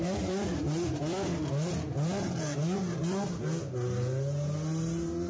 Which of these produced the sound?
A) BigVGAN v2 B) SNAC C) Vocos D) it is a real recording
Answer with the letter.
D